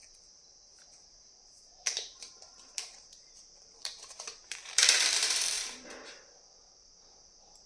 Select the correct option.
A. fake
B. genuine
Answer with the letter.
A